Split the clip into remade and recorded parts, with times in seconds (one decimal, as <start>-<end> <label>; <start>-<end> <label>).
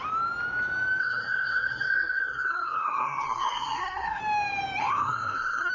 0.0-1.0 recorded; 1.0-4.2 remade; 4.2-4.8 recorded; 4.8-5.7 remade